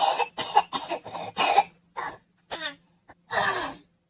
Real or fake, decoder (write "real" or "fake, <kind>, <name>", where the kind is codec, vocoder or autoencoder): real